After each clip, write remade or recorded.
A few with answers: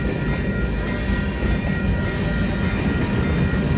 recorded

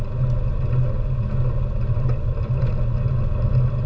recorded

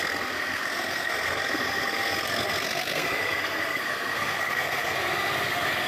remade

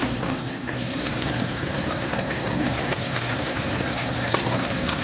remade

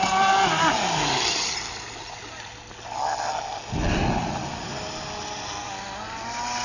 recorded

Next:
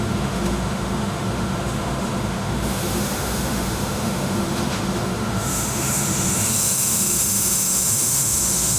remade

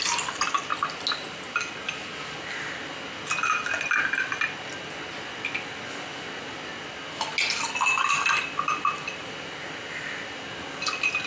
recorded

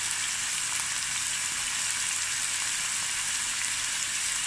recorded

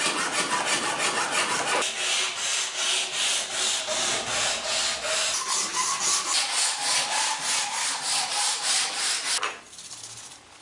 recorded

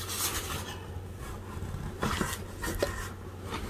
recorded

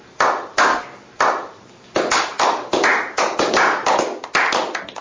recorded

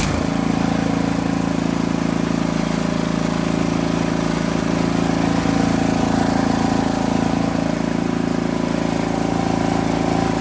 recorded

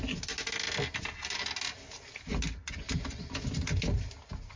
recorded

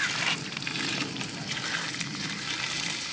remade